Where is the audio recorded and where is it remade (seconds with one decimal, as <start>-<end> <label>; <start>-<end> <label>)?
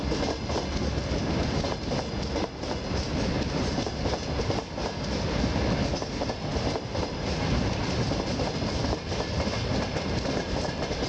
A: 0.0-11.1 recorded